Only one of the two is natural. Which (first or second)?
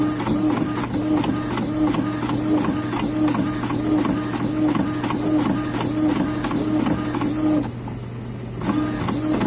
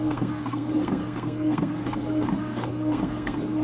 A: first